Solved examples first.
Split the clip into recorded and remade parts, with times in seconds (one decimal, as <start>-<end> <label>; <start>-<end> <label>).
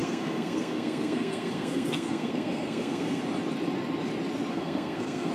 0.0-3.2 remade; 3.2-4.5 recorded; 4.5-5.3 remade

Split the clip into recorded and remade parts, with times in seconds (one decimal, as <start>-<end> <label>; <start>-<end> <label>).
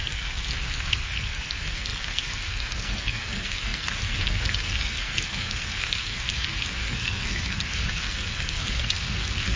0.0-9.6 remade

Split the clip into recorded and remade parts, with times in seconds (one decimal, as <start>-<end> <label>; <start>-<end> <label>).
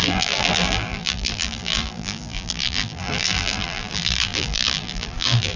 0.0-5.6 remade